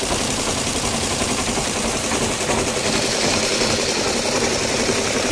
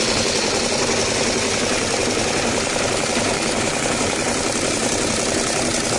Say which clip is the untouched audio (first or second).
second